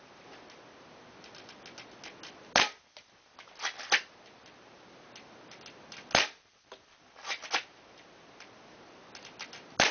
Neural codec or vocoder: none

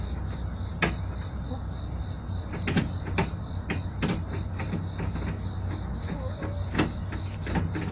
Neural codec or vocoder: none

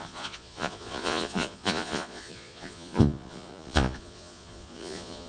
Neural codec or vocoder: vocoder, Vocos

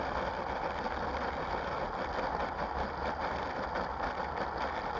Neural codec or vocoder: none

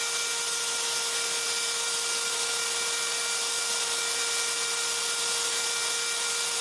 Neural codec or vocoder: none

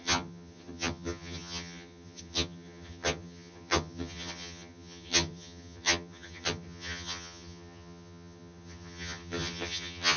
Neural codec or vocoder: vocoder, HiFi-GAN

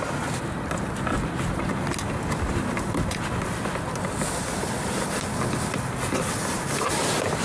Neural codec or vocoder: none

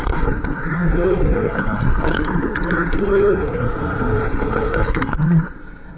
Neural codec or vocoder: codec, SNAC